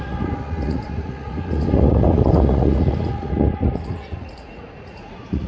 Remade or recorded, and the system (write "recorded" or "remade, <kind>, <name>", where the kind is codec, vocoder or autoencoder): remade, vocoder, Vocos